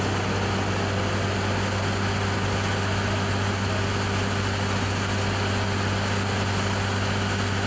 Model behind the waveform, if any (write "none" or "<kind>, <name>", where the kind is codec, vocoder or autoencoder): none